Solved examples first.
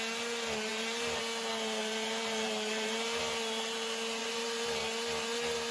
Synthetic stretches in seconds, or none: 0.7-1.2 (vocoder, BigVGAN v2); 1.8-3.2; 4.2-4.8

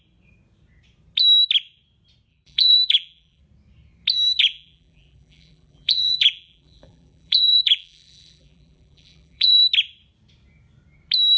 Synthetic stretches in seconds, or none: 2.3-3.4 (vocoder, BigVGAN v2); 4.4-9.6

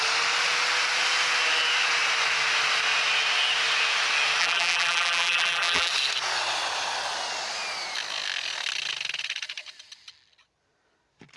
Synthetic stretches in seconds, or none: 4.4-5.9 (vocoder, BigVGAN v2)

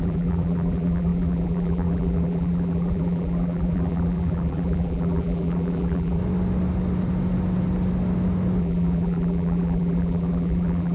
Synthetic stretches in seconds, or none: 0.0-6.2 (vocoder, BigVGAN v2); 8.6-10.9